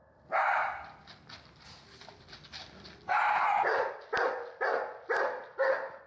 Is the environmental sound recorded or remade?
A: recorded